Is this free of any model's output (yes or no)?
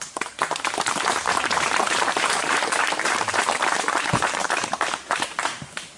no